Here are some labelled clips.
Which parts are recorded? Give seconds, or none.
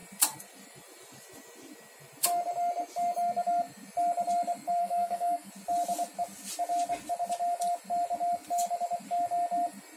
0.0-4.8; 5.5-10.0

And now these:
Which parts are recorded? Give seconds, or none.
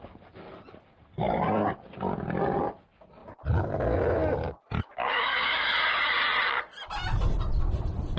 0.0-8.2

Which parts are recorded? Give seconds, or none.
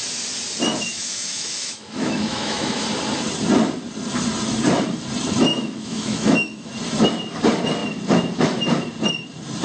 0.0-0.9; 2.8-5.5; 6.7-9.6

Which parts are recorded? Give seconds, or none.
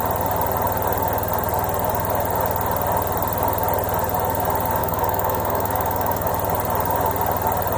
0.0-4.8; 6.3-7.8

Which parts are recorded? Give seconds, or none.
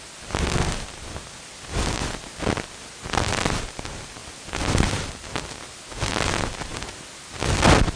0.0-8.0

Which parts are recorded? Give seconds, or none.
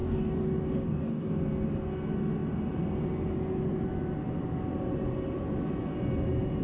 1.3-6.6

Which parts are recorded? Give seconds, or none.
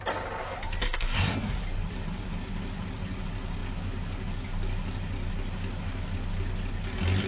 0.0-0.8; 1.6-7.3